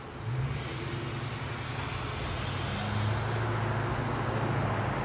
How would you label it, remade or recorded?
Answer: recorded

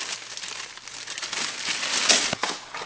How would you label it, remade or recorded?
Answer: recorded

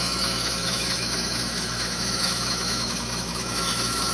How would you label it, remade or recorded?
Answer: remade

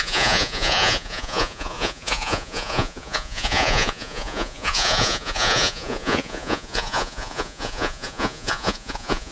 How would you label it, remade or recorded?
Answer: remade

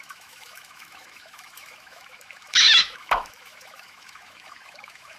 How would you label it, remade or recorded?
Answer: remade